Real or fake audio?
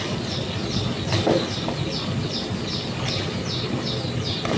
real